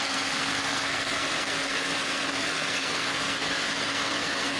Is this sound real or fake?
fake